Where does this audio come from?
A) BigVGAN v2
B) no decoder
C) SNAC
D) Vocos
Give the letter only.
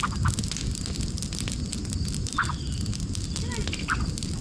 B